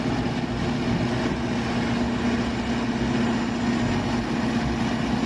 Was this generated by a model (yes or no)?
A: no